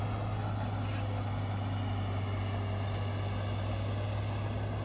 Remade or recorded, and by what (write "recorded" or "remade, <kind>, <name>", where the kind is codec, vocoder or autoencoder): recorded